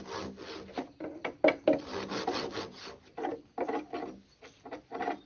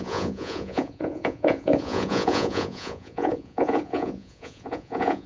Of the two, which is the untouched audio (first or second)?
first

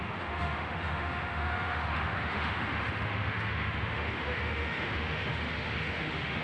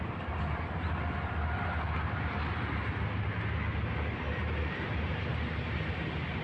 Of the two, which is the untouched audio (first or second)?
second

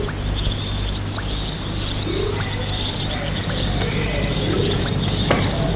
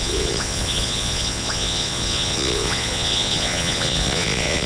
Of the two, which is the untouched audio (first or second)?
first